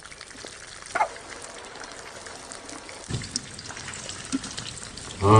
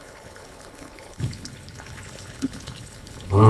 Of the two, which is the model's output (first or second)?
second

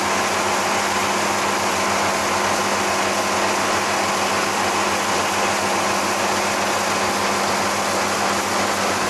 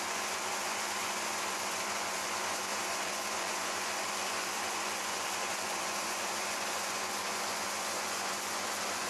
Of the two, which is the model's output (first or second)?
second